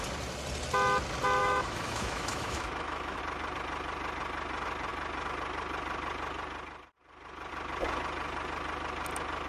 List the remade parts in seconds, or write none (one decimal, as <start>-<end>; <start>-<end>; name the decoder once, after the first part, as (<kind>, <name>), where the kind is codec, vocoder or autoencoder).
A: 1.4-3.2 (autoencoder, DAC-VAE)